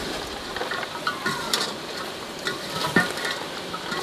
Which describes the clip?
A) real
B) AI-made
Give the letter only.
B